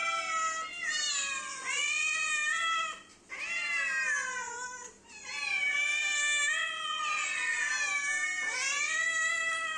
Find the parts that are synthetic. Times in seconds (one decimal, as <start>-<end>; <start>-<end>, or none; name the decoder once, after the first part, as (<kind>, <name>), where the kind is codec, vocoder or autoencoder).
1.5-2.3 (vocoder, Vocos); 6.6-7.7

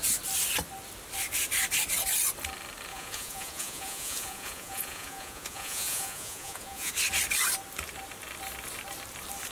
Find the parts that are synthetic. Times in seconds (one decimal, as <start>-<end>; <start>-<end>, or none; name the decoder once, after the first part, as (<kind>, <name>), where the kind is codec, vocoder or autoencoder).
2.9-6.9 (vocoder, Vocos)